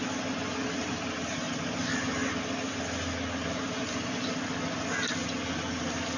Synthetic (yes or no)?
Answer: no